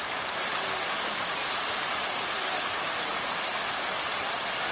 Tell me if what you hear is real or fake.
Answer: real